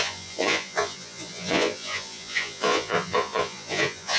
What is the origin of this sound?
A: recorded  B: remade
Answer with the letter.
B